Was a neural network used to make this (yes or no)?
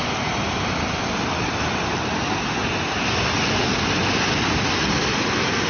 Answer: no